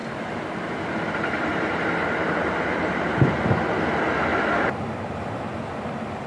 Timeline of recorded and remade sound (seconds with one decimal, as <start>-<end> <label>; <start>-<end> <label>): 0.0-1.5 recorded; 1.5-3.4 remade; 3.4-4.3 recorded; 4.3-5.4 remade; 5.4-6.3 recorded